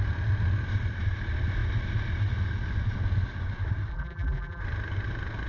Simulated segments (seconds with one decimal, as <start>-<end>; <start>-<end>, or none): 3.9-4.6